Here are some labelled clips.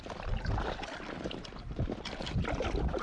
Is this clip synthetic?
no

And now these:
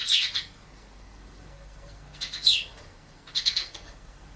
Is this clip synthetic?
yes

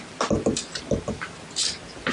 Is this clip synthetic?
no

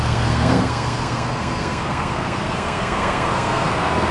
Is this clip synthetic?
yes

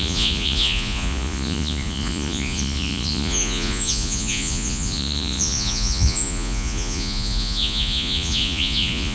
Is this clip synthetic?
yes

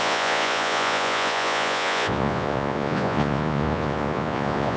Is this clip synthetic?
yes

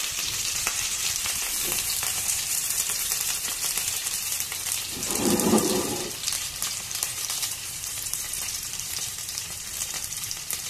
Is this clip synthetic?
yes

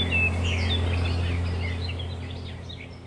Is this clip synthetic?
no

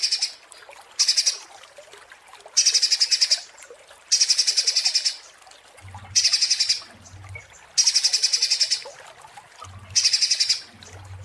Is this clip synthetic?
no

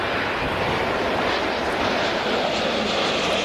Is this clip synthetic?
no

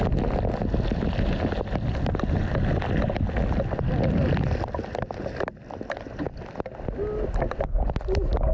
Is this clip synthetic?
no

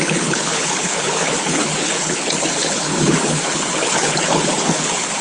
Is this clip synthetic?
yes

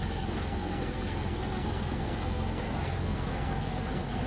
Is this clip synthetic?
yes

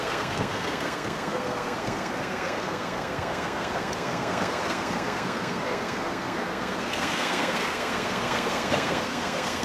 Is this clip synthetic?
yes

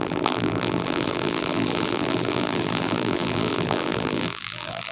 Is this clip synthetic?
yes